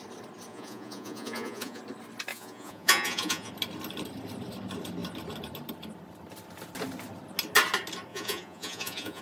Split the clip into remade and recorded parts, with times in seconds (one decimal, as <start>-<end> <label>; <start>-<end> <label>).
0.0-0.5 recorded; 0.5-1.8 remade; 1.8-2.3 recorded; 2.3-3.5 remade; 3.5-8.1 recorded; 8.1-9.2 remade